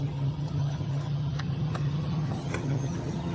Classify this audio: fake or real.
fake